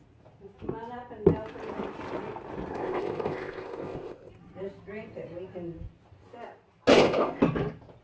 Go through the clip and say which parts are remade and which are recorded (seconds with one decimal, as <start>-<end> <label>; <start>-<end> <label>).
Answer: 0.0-2.7 recorded; 2.7-4.3 remade; 4.3-6.9 recorded; 6.9-7.4 remade; 7.4-8.0 recorded